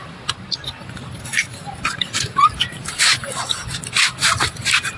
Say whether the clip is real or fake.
real